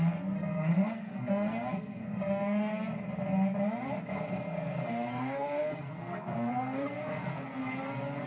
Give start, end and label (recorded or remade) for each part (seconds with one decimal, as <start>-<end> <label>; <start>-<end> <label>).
0.0-2.7 remade; 2.7-4.3 recorded; 4.3-7.6 remade; 7.6-8.3 recorded